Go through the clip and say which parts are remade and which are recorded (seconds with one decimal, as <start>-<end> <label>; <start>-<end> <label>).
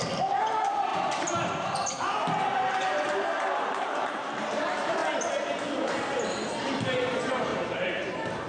0.0-5.0 remade; 5.0-6.6 recorded; 6.6-8.5 remade